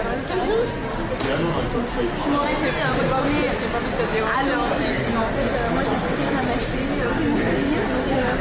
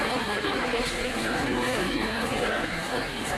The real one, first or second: first